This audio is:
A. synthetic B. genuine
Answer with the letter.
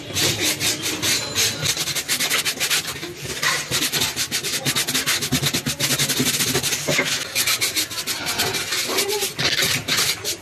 B